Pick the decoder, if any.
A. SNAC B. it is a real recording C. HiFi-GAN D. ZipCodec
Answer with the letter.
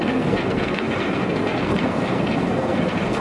A